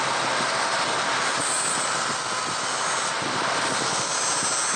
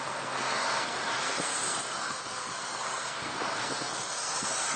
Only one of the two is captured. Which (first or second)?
first